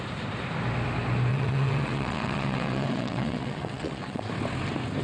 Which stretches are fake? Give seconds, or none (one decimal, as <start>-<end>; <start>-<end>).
1.3-4.3